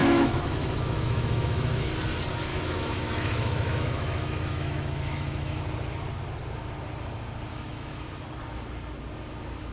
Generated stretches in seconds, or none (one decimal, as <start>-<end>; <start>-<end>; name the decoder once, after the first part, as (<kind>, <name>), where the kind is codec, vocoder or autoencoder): 0.0-1.9 (autoencoder, DAC-VAE); 2.5-5.6; 7.5-8.1